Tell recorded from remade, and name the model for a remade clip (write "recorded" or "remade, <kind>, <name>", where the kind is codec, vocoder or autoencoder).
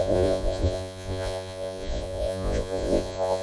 remade, vocoder, Vocos